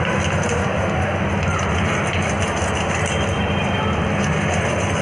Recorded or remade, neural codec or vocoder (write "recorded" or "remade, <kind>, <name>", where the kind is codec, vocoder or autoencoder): recorded